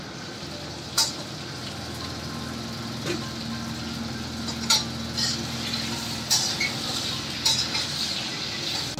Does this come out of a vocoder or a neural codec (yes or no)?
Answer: no